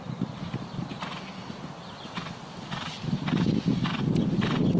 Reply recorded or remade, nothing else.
recorded